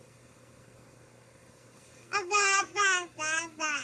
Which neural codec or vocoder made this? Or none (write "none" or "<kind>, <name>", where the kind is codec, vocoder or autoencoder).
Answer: codec, SNAC